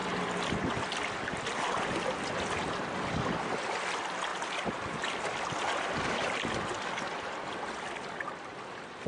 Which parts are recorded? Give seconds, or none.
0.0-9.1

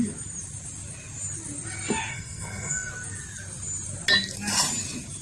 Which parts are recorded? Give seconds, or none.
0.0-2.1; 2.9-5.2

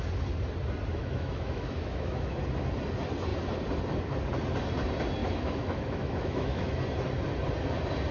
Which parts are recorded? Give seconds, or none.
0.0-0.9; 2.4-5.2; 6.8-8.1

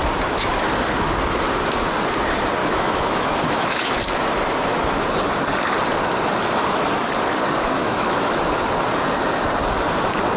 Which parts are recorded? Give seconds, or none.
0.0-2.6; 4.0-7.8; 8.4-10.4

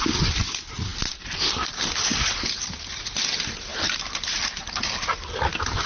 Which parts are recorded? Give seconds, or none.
0.0-5.9

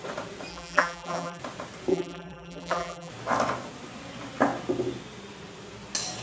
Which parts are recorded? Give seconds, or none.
0.0-0.5; 1.4-1.9; 3.1-6.2